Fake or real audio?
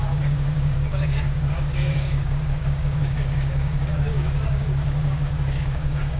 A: fake